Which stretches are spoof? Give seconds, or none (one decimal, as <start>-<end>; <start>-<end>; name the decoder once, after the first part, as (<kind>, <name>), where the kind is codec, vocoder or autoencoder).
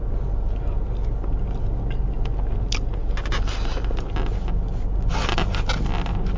none